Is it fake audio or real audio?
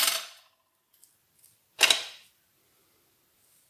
real